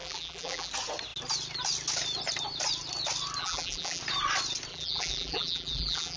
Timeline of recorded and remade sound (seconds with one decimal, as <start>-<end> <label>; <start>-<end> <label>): 0.0-0.7 remade; 0.7-3.4 recorded; 3.4-4.0 remade; 4.0-4.7 recorded; 4.7-6.2 remade